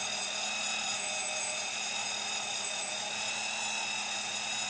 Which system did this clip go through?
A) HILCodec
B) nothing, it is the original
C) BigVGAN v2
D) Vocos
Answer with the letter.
B